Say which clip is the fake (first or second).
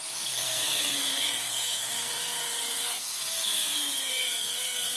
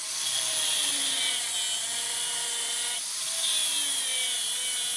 first